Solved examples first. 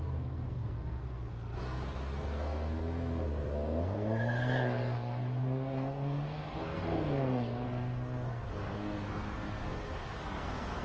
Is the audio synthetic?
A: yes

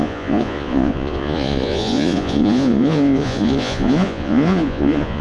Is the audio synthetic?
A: yes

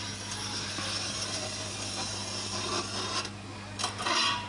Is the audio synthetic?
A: no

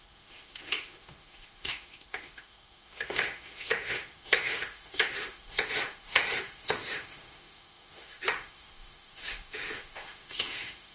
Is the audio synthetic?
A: yes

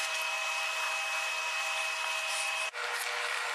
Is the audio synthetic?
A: no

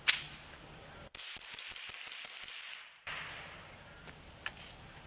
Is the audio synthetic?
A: no